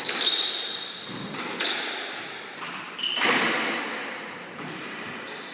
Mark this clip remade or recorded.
recorded